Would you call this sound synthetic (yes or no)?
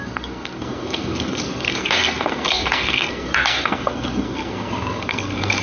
yes